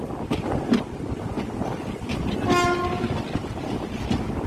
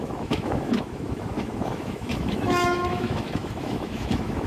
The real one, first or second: first